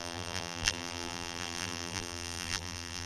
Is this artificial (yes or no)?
yes